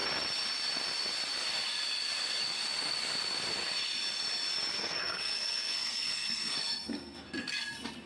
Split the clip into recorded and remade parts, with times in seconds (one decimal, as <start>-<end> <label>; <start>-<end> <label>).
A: 0.0-4.7 recorded; 4.7-7.5 remade; 7.5-8.1 recorded